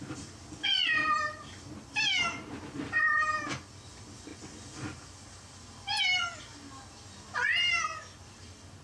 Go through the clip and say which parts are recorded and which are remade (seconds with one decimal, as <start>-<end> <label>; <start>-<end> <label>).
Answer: 0.0-8.8 recorded